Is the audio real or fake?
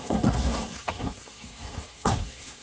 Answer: fake